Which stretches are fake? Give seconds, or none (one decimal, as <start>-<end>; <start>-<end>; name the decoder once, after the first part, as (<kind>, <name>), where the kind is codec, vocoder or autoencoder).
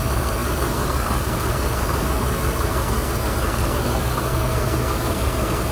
0.0-5.7 (codec, SNAC)